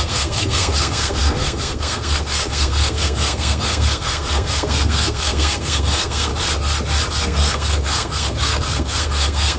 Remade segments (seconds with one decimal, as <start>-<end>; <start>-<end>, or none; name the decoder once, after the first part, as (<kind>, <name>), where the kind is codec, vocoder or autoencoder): 0.0-6.3 (codec, SNAC); 7.1-9.6